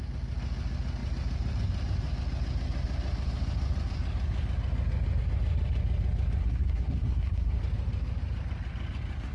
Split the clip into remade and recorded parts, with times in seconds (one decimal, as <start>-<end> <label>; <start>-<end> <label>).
0.0-6.4 recorded; 6.4-7.6 remade; 7.6-9.3 recorded